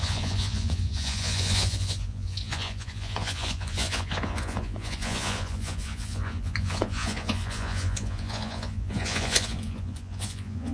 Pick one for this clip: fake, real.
fake